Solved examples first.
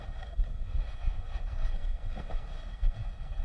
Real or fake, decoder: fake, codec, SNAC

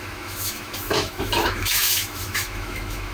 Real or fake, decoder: fake, autoencoder, DAC-VAE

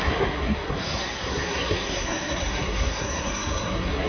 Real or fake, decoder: fake, codec, SNAC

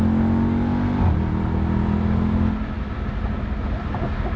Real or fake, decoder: real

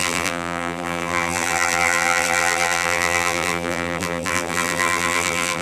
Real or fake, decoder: fake, vocoder, BigVGAN v2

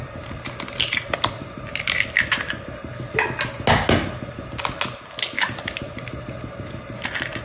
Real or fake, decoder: real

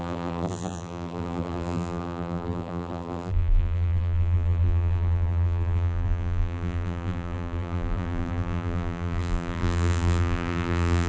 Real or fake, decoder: fake, vocoder, BigVGAN v2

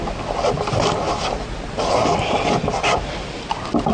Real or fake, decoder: real